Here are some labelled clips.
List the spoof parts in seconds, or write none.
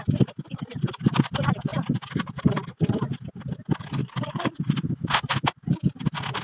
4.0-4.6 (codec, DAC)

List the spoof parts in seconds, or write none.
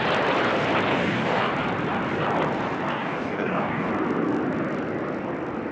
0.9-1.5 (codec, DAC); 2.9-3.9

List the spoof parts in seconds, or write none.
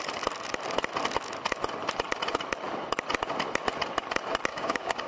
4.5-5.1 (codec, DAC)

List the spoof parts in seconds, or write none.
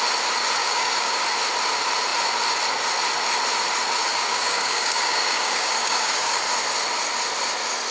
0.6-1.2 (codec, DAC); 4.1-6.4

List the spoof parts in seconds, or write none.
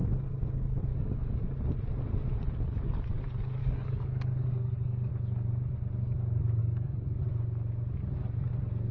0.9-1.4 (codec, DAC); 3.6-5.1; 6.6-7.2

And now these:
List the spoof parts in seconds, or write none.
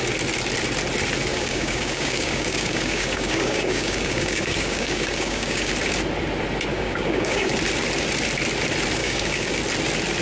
1.3-5.7 (codec, DAC); 6.7-7.5; 9.0-9.5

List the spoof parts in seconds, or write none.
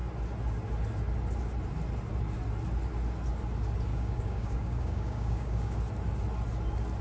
3.9-5.8 (codec, DAC)